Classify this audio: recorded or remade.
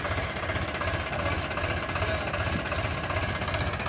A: recorded